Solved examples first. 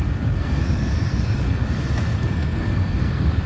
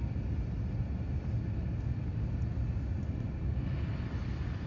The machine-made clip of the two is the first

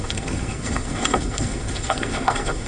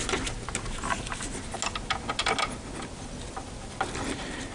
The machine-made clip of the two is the first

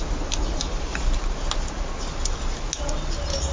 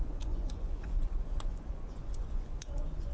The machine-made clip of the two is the second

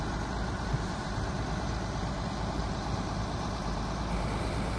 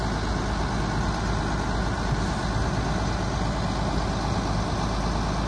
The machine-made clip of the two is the first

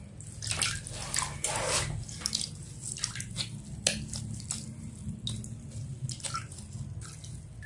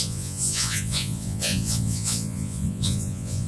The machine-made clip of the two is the second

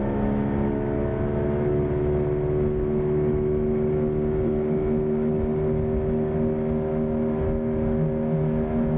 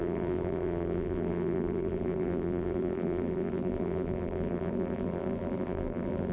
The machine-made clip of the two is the second